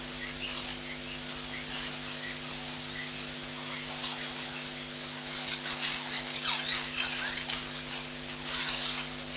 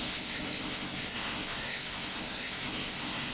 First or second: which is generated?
second